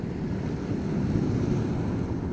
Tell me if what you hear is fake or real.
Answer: real